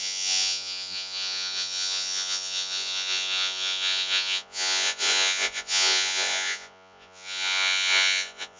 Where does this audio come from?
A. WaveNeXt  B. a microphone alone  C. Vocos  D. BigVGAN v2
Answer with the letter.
C